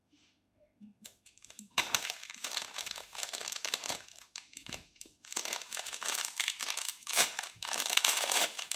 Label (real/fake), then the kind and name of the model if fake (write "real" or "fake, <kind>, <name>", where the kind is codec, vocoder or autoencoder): fake, autoencoder, DAC-VAE